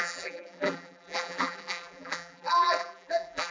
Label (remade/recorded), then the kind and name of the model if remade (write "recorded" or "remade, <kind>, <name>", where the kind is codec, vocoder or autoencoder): remade, vocoder, BigVGAN v2